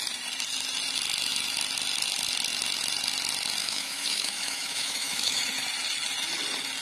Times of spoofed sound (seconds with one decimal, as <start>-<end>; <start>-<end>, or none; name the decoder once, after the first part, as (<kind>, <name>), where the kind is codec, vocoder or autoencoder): 3.6-5.4 (autoencoder, DAC-VAE)